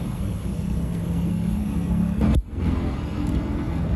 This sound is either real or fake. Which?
fake